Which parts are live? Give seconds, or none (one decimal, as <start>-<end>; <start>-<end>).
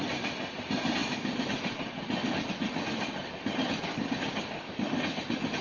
0.0-3.9; 4.7-5.6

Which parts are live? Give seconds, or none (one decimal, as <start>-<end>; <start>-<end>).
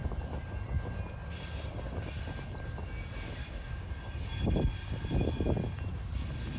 0.0-3.4; 3.9-6.6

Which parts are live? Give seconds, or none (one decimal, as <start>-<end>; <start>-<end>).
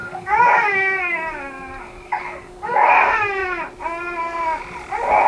2.9-5.3